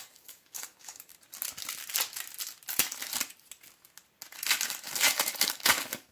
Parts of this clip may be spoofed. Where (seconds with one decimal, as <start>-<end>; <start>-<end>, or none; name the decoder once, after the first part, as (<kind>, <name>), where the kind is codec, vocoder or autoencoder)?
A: 0.0-1.1 (codec, DAC); 4.8-6.1